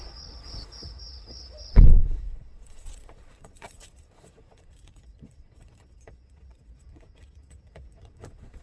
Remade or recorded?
remade